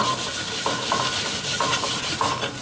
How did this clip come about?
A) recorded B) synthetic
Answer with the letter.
A